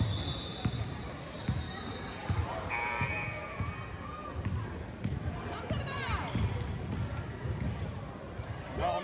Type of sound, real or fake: fake